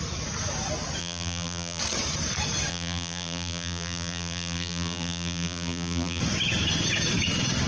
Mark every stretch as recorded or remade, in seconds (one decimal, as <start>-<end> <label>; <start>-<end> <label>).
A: 0.0-1.0 recorded; 1.0-1.8 remade; 1.8-2.7 recorded; 2.7-6.2 remade; 6.2-7.7 recorded

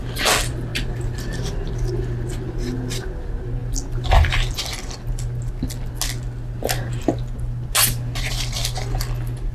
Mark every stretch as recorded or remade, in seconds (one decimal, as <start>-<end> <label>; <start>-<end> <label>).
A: 0.0-9.5 recorded